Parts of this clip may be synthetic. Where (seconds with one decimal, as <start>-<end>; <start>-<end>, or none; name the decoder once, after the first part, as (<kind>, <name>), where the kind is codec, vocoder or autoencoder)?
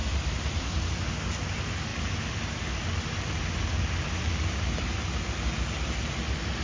0.0-0.9 (vocoder, BigVGAN v2)